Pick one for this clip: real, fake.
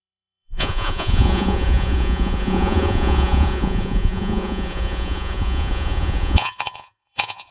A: fake